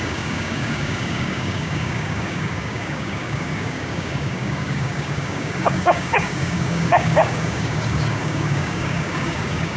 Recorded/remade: remade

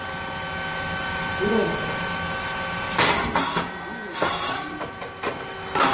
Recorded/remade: recorded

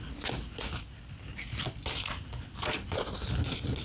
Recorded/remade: recorded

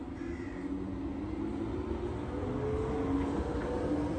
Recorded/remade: recorded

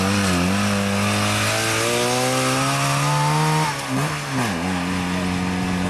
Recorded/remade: recorded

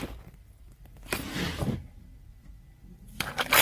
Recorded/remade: remade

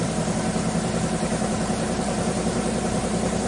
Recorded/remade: remade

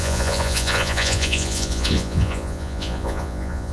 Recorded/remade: remade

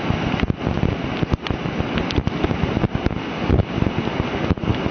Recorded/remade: recorded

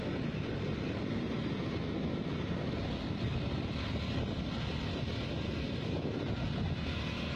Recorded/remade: recorded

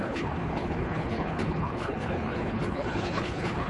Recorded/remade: remade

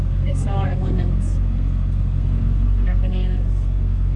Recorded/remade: remade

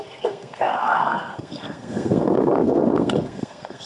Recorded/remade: remade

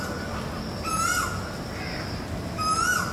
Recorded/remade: recorded